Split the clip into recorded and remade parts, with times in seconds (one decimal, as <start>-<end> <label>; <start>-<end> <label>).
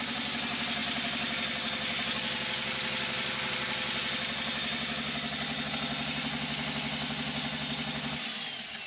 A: 0.0-8.9 recorded